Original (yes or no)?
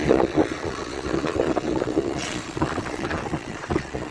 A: no